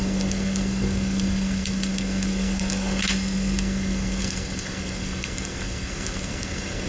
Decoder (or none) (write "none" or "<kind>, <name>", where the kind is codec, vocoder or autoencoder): codec, SNAC